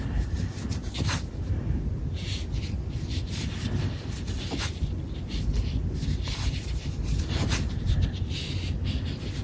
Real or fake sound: real